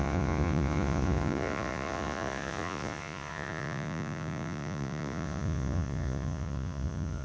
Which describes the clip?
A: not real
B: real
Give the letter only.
A